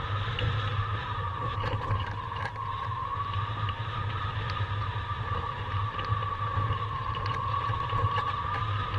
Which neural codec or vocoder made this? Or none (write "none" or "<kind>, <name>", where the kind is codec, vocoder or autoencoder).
vocoder, BigVGAN v2